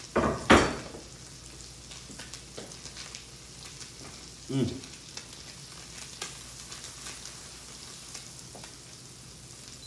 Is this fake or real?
real